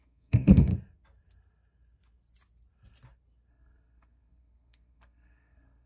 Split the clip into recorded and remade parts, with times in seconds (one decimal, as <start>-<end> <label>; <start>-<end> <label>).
0.0-0.7 remade; 0.7-3.5 recorded; 3.5-5.9 remade